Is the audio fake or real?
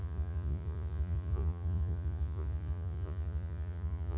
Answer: fake